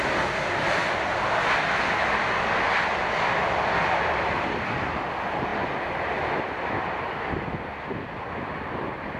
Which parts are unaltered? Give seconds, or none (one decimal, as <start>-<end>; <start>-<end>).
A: 0.0-9.2